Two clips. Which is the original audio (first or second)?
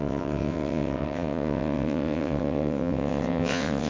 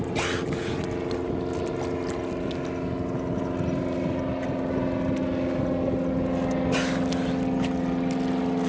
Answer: second